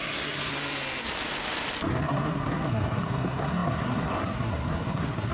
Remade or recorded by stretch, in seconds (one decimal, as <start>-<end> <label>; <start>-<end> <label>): 0.0-0.5 remade; 0.5-1.9 recorded; 1.9-5.3 remade